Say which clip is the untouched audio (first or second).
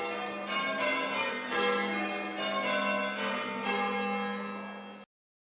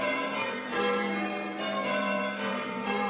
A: first